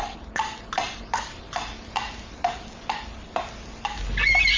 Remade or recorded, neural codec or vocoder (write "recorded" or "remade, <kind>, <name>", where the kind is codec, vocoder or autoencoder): recorded